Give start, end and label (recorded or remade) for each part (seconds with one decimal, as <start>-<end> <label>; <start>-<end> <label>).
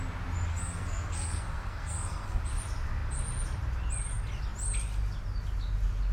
0.0-0.5 recorded; 0.5-2.4 remade; 2.4-6.1 recorded